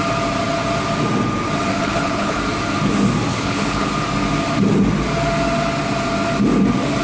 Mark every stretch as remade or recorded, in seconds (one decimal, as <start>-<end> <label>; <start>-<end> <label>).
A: 0.0-1.7 recorded; 1.7-2.4 remade; 2.4-3.3 recorded; 3.3-3.9 remade; 3.9-7.0 recorded